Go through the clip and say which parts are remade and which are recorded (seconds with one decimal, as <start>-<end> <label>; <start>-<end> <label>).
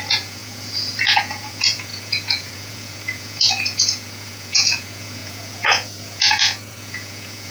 0.0-7.5 remade